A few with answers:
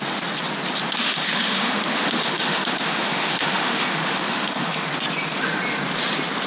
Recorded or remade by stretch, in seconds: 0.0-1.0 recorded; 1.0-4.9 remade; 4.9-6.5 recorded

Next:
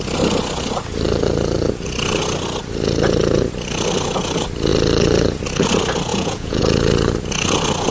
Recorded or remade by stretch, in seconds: 0.0-6.1 recorded; 6.1-6.6 remade; 6.6-7.9 recorded

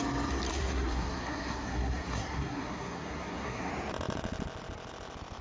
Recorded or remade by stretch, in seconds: 0.0-0.5 recorded; 0.5-3.7 remade; 3.7-5.4 recorded